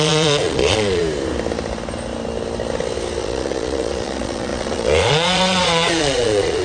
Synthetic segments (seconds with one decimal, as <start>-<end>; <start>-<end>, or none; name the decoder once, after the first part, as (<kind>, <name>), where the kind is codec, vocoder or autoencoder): 0.0-1.0 (vocoder, Vocos); 3.2-6.6